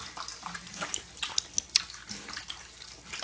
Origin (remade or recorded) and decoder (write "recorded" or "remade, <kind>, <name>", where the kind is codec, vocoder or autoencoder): recorded